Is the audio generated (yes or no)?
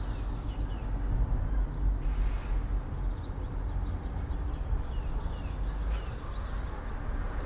no